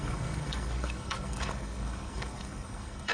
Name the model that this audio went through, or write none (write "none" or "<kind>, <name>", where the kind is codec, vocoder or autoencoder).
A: codec, SNAC